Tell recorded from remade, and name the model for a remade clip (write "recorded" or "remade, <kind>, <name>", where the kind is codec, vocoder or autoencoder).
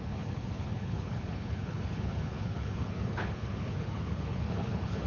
remade, codec, HILCodec